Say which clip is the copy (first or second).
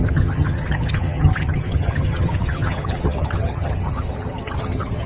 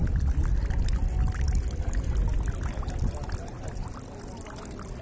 first